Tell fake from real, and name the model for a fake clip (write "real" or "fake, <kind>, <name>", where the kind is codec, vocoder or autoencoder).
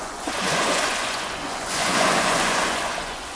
fake, vocoder, Vocos